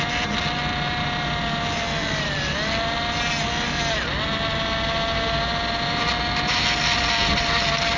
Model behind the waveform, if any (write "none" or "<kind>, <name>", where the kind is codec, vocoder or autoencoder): none